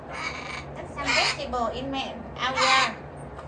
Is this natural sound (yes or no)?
yes